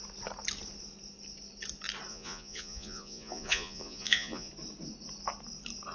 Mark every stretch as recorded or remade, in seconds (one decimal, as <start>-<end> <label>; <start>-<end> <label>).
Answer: 0.0-2.1 recorded; 2.1-4.5 remade; 4.5-5.9 recorded